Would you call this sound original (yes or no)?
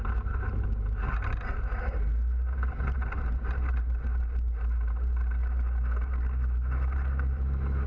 yes